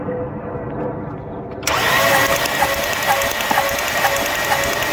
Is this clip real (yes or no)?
yes